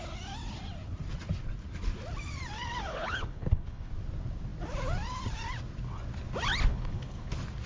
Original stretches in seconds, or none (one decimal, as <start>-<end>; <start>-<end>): 0.0-2.9; 3.9-6.7; 7.3-7.7